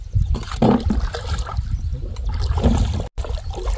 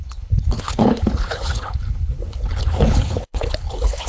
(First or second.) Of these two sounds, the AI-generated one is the second